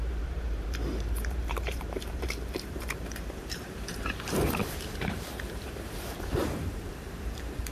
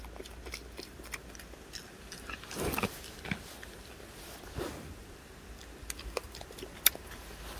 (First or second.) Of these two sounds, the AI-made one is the first